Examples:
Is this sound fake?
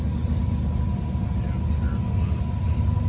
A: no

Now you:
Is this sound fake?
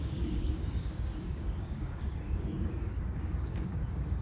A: yes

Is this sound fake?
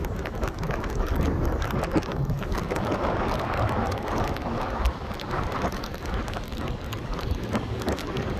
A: yes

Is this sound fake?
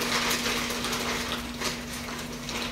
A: no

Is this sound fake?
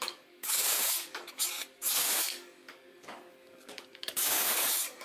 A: yes